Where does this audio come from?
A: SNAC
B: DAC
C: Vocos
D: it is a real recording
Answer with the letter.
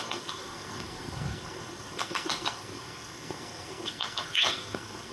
A